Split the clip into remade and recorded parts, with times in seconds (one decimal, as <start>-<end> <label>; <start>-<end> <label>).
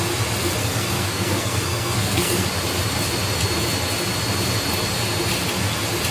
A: 0.0-0.6 recorded; 0.6-2.5 remade; 2.5-6.1 recorded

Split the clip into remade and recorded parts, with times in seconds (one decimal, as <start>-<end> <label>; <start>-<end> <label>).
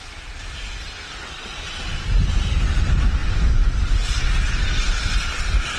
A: 0.0-5.8 recorded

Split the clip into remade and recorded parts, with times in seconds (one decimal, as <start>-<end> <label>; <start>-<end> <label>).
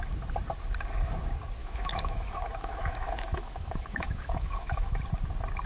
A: 0.0-1.6 recorded; 1.6-5.0 remade; 5.0-5.7 recorded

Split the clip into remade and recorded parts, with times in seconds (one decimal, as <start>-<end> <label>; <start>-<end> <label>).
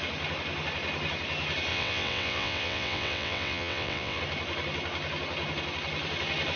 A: 0.0-1.7 recorded; 1.7-4.2 remade; 4.2-6.6 recorded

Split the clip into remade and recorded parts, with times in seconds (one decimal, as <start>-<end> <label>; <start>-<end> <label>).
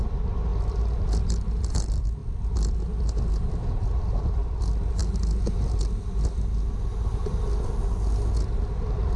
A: 0.0-9.2 recorded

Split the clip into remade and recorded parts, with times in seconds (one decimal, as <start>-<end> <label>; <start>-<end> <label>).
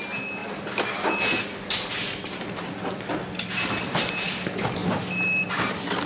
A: 0.0-6.1 recorded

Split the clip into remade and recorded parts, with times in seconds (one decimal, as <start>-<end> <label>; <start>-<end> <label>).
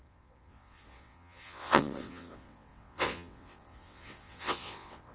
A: 0.0-5.1 remade